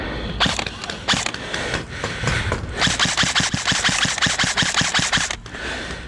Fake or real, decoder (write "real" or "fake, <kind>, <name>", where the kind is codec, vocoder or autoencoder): real